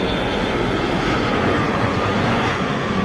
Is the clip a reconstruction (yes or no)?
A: yes